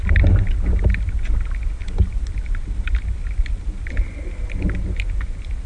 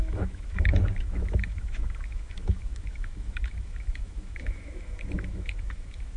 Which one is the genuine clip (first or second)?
first